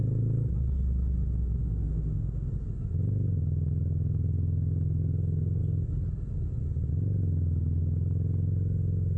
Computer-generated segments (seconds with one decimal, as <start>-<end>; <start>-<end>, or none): 1.6-2.5